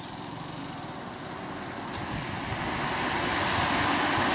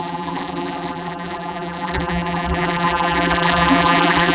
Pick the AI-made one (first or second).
second